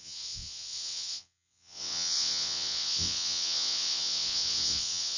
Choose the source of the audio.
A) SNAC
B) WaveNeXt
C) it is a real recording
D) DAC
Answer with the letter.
B